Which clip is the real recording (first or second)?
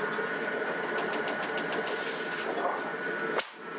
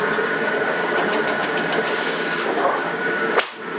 first